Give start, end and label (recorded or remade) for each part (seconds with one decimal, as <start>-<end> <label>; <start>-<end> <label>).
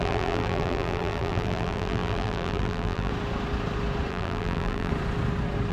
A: 0.0-3.1 remade; 3.1-4.1 recorded; 4.1-4.9 remade; 4.9-5.7 recorded